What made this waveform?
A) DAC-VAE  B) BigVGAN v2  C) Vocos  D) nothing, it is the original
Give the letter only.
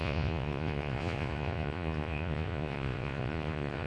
C